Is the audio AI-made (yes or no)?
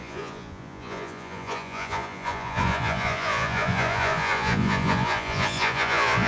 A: yes